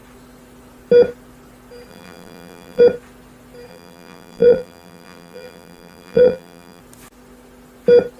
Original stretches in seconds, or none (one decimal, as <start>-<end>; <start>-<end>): 0.0-1.9; 2.8-3.7; 6.8-8.2

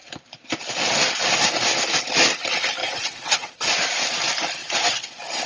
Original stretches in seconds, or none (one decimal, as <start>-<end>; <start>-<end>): 0.0-2.8; 3.6-4.6; 5.1-5.5

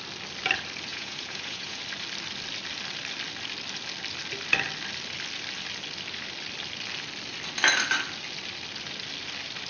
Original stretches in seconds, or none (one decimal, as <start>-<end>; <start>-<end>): 0.0-0.9; 1.8-9.7